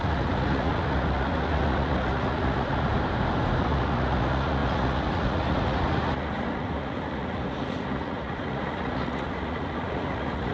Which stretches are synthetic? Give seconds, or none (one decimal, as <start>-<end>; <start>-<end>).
0.0-2.9; 3.6-10.5